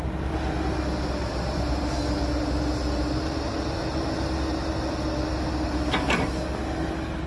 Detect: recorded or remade recorded